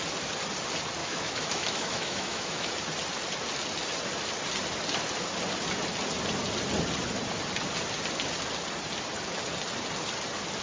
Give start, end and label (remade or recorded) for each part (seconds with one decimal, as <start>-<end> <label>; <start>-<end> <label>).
0.0-1.0 recorded; 1.0-2.7 remade; 2.7-10.6 recorded

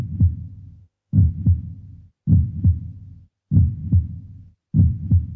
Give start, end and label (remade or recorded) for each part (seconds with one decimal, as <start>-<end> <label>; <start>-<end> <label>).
0.0-0.8 recorded; 0.8-1.3 remade; 1.3-5.4 recorded